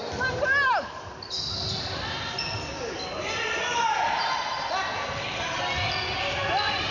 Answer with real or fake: real